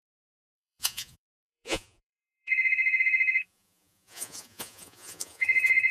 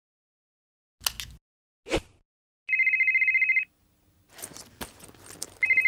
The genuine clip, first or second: second